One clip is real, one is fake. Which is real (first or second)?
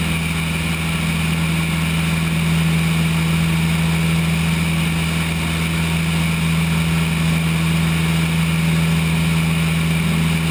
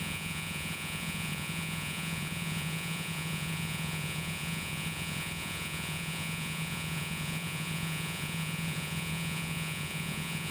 first